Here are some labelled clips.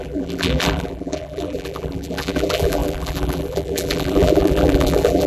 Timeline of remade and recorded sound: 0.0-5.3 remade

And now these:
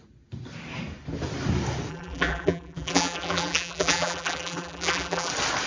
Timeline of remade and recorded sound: 0.0-1.9 recorded; 1.9-5.3 remade; 5.3-5.7 recorded

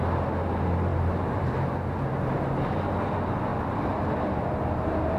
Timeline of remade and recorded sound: 0.0-0.9 recorded; 0.9-1.5 remade; 1.5-3.5 recorded; 3.5-4.0 remade; 4.0-5.2 recorded